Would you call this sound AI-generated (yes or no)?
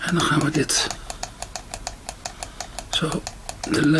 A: no